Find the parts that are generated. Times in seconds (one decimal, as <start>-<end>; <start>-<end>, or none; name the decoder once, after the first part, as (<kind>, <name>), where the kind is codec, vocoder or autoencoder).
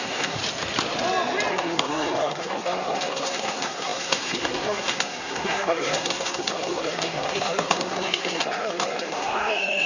0.0-0.4 (codec, SNAC); 1.5-9.9